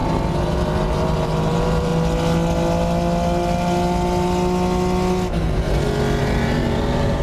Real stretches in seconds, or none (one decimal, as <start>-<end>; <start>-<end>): 0.0-0.5; 1.9-6.2